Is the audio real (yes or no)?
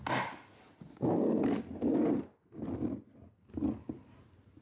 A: yes